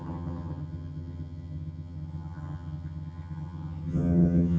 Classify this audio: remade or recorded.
remade